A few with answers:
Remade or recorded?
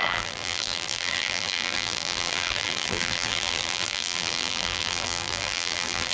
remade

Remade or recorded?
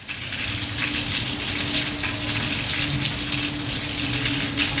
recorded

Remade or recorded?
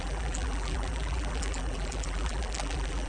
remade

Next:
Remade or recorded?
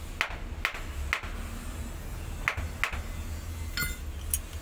recorded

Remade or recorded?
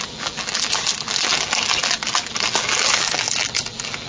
remade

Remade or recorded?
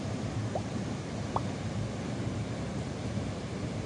remade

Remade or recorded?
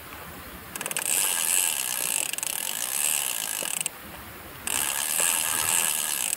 recorded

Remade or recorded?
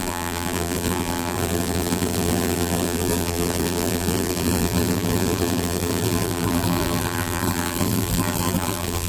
remade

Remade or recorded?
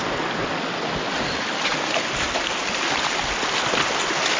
recorded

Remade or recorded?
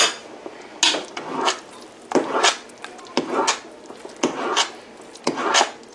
recorded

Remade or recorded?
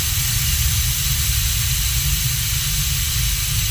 recorded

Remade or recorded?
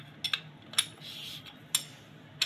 recorded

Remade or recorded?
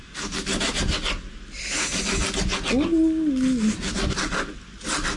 recorded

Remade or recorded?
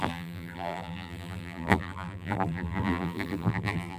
remade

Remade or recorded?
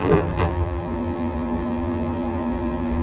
remade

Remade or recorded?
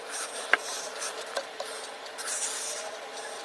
remade